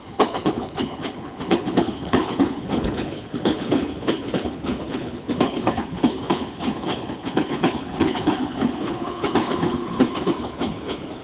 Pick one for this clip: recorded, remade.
remade